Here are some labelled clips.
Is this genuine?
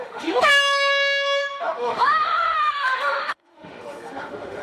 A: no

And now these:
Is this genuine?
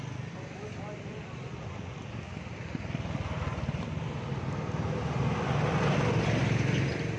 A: yes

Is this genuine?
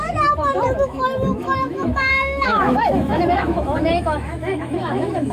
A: no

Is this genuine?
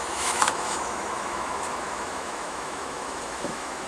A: no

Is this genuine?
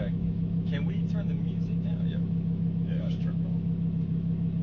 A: no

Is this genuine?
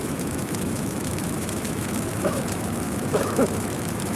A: no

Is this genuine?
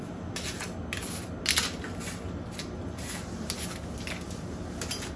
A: yes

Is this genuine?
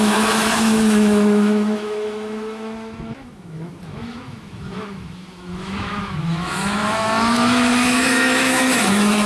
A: no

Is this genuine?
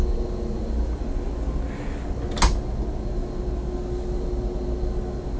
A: yes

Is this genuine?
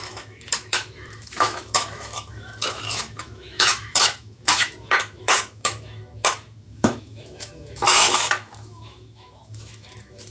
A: no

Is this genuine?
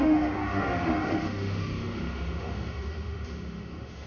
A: no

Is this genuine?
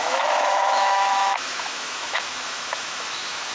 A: no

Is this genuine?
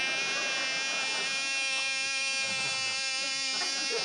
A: yes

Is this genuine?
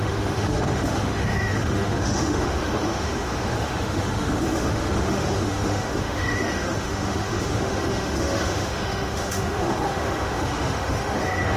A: no